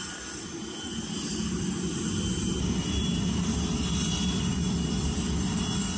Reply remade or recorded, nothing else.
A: recorded